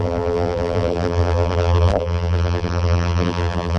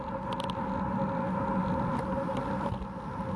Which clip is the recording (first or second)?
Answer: second